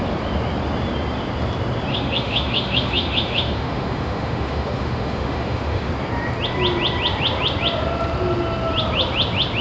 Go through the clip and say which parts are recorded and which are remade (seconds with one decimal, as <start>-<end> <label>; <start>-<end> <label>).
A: 0.0-1.9 recorded; 1.9-5.9 remade; 5.9-9.6 recorded